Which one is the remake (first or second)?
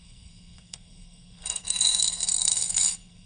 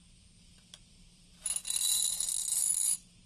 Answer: first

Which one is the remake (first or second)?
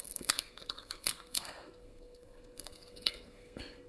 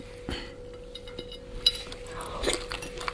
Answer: first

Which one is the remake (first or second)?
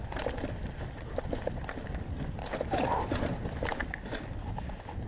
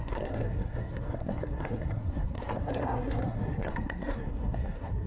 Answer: second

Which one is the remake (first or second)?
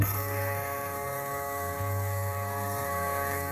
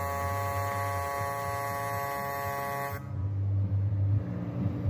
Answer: first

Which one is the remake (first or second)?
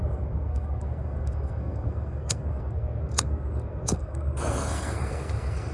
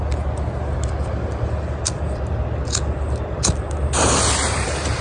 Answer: first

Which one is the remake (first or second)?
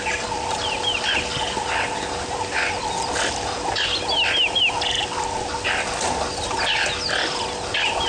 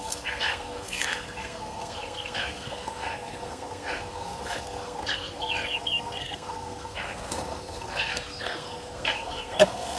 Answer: second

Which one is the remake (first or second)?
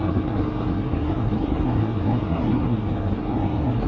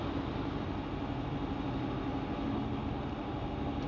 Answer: first